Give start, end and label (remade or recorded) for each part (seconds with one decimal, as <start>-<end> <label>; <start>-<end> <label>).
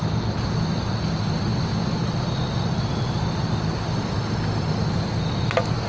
0.0-5.9 recorded